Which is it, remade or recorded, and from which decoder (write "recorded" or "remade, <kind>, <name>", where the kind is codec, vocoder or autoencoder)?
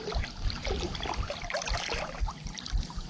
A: remade, vocoder, BigVGAN v2